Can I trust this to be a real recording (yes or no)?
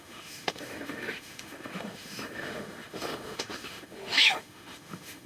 no